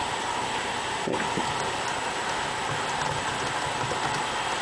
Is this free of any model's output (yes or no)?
yes